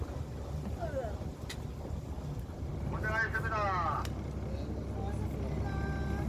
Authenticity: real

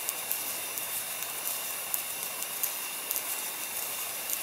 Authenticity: real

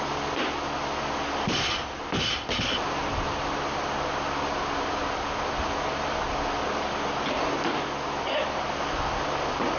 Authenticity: real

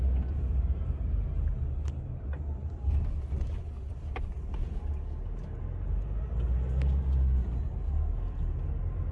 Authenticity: real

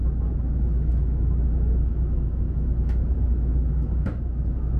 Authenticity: fake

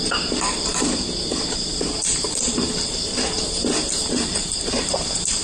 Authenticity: fake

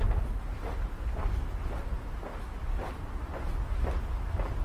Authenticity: real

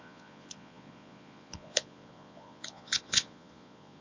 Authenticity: fake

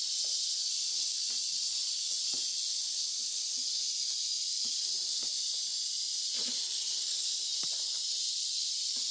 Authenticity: fake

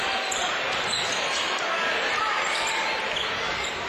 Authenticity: real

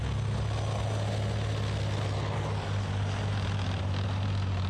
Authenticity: real